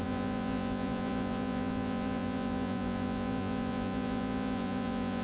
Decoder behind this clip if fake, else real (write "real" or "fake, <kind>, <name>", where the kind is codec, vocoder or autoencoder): fake, vocoder, Vocos